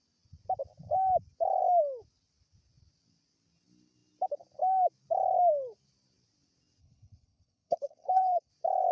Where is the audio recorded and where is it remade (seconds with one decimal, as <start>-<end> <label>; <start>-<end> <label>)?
0.0-6.8 recorded; 6.8-8.5 remade; 8.5-8.9 recorded